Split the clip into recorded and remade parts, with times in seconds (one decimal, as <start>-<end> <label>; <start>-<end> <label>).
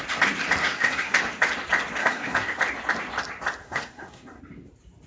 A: 0.0-0.6 recorded; 0.6-1.2 remade; 1.2-2.0 recorded; 2.0-2.6 remade; 2.6-3.6 recorded; 3.6-4.4 remade; 4.4-5.1 recorded